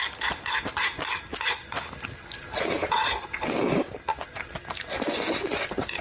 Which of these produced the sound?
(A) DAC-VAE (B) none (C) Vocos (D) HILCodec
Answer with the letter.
B